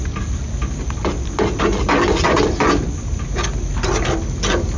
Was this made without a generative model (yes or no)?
yes